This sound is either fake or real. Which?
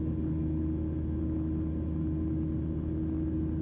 real